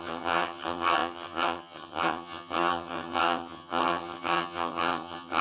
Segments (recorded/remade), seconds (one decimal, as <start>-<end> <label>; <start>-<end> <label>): 0.0-5.4 remade